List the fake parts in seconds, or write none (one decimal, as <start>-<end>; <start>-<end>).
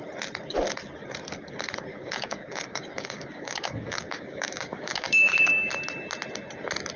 1.9-5.7